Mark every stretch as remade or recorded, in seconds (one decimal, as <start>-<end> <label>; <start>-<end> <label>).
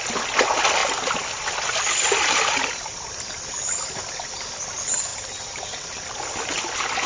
0.0-0.8 recorded; 0.8-3.6 remade; 3.6-7.1 recorded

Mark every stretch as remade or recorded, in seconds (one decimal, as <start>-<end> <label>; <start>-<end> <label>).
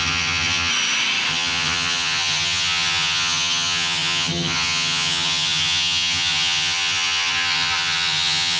0.0-0.7 remade; 0.7-1.3 recorded; 1.3-8.6 remade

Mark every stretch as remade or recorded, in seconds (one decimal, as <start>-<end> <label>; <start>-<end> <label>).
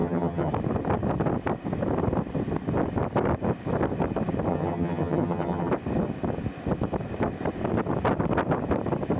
0.0-0.5 remade; 0.5-4.5 recorded; 4.5-5.7 remade; 5.7-9.2 recorded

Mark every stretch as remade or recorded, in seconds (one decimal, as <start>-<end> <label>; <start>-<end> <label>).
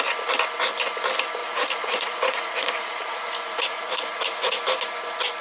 0.0-1.4 recorded; 1.4-4.6 remade; 4.6-5.4 recorded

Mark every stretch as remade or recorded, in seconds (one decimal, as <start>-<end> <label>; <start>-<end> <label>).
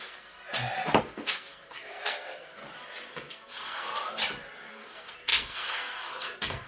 0.0-0.4 remade; 0.4-1.0 recorded; 1.0-2.6 remade; 2.6-3.1 recorded; 3.1-4.2 remade; 4.2-4.7 recorded; 4.7-6.7 remade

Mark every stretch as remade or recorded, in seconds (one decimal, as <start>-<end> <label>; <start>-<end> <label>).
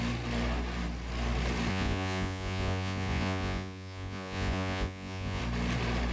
0.0-1.7 recorded; 1.7-5.4 remade; 5.4-6.1 recorded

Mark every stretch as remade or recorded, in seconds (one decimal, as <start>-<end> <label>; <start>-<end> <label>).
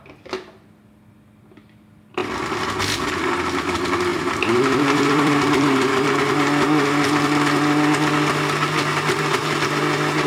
0.0-2.2 recorded; 2.2-3.1 remade; 3.1-4.1 recorded; 4.1-6.1 remade; 6.1-10.3 recorded